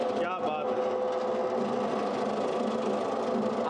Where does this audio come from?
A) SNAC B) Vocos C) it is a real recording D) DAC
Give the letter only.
C